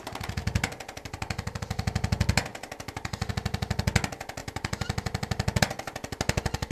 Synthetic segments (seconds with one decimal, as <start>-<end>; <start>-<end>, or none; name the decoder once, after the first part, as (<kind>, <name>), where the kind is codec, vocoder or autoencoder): 2.5-3.3 (vocoder, BigVGAN v2); 4.4-5.6